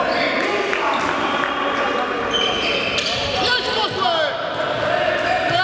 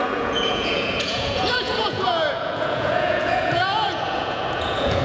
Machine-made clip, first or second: second